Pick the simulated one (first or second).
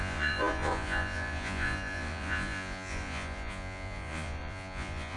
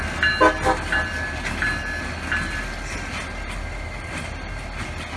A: first